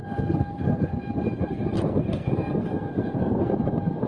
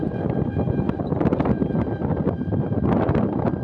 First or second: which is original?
second